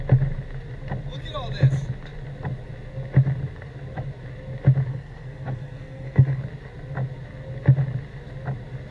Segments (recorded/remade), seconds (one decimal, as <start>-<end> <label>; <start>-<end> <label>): 0.0-4.9 recorded; 4.9-6.4 remade; 6.4-8.9 recorded

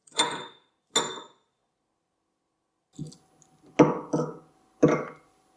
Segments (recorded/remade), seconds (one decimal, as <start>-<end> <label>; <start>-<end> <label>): 0.0-0.7 remade; 0.7-5.6 recorded

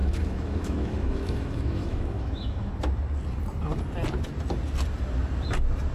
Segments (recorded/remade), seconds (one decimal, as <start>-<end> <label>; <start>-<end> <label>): 0.0-2.7 remade; 2.7-5.9 recorded

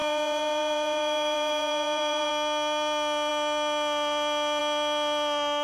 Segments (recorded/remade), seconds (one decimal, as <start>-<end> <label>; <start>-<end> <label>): 0.0-2.3 remade; 2.3-5.6 recorded

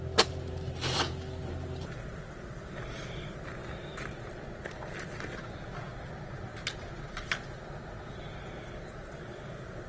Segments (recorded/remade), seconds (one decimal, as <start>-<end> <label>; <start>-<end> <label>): 0.0-9.9 recorded